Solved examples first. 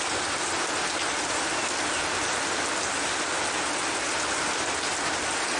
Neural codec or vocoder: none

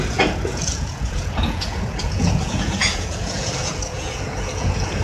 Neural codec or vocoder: vocoder, Vocos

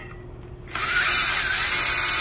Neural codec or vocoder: none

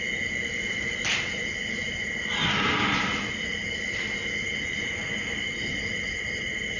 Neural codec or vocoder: none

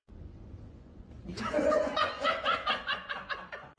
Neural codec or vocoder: vocoder, Vocos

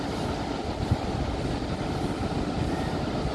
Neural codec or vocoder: none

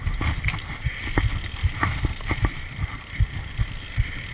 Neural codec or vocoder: none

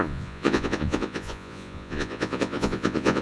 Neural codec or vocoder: vocoder, Vocos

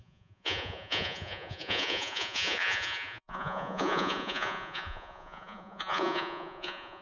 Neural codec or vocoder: vocoder, Vocos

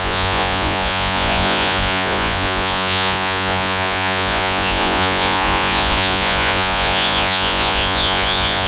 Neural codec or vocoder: vocoder, Vocos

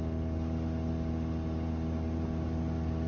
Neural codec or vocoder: none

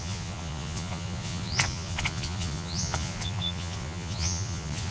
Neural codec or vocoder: vocoder, Vocos